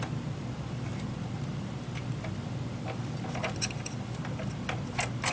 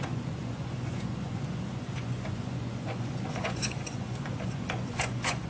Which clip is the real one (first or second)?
first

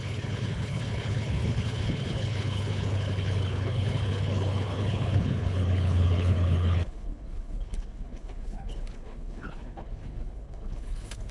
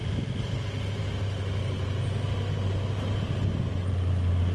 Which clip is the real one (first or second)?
second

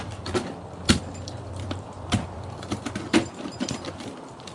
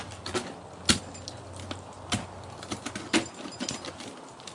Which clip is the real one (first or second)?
second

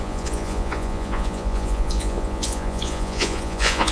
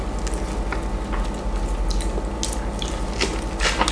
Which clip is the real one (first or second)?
second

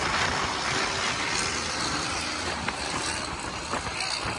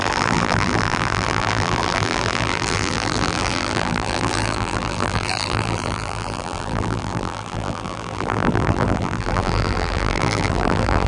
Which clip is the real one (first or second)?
first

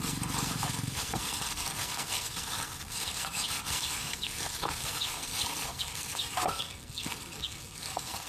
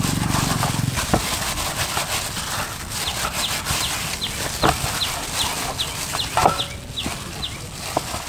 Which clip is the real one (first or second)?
second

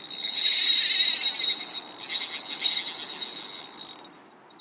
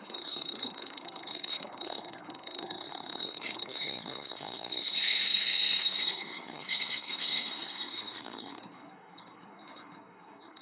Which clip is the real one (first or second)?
first